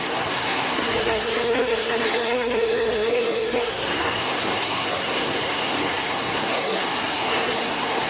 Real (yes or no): no